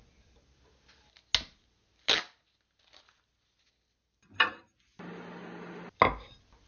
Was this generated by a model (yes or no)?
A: no